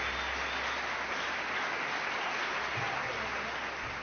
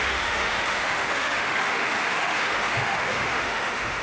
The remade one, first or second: second